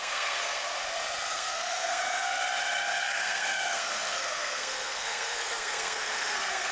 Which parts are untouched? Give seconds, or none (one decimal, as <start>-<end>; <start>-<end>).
0.6-1.3; 2.4-3.0